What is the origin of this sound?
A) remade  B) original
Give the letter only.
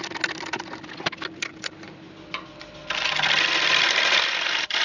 B